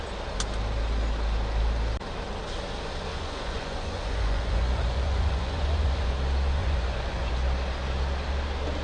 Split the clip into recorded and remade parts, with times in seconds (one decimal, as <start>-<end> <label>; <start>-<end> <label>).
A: 0.0-3.1 recorded; 3.1-6.1 remade; 6.1-6.6 recorded; 6.6-7.3 remade; 7.3-8.8 recorded